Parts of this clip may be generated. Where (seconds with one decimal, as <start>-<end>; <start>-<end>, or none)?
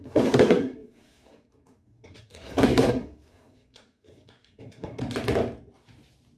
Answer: 0.0-5.0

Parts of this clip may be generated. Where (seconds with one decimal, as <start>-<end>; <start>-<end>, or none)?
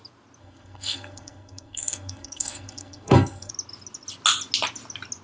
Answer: 0.4-3.5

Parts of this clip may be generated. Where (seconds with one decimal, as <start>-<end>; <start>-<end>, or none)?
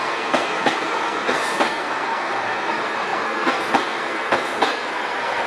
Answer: 0.0-5.5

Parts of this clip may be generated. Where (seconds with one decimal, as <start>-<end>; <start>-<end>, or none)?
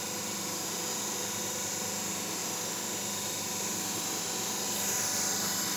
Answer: none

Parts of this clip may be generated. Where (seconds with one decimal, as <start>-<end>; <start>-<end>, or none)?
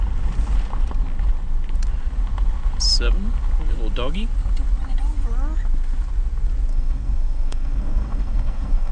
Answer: 6.7-8.9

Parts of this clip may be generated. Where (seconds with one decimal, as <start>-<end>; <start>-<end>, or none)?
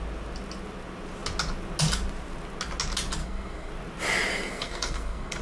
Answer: 3.2-3.7; 4.3-5.4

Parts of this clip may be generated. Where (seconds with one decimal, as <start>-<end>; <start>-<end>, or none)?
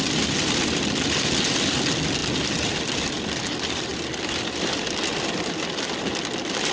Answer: none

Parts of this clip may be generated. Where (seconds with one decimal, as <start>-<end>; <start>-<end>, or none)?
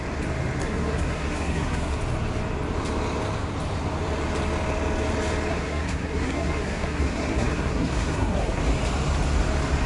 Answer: 0.6-2.0; 5.5-8.6